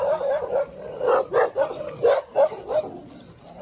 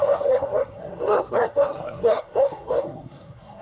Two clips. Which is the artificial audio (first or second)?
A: second